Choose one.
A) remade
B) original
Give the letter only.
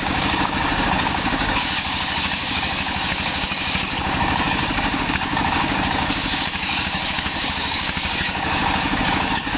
A